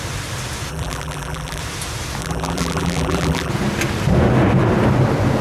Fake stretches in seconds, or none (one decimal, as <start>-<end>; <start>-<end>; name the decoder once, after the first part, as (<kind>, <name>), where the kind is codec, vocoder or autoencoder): 0.7-1.6 (vocoder, BigVGAN v2); 2.2-3.5